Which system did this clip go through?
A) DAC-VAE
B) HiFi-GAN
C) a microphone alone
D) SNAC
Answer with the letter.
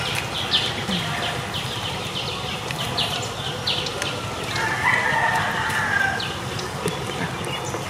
C